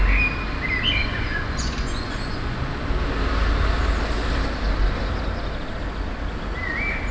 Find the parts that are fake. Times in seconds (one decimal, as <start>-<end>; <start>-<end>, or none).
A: 1.0-2.6